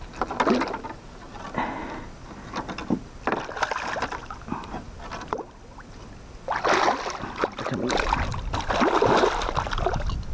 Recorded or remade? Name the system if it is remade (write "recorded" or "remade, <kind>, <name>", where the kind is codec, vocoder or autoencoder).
recorded